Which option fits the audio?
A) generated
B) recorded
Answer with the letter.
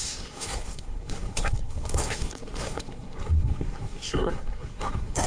A